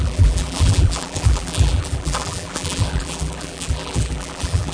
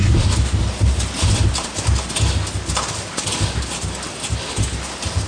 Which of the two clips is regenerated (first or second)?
first